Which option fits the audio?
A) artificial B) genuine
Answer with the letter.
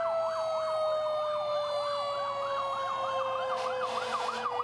B